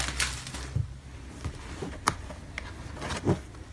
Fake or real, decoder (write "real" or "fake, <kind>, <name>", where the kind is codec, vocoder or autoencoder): real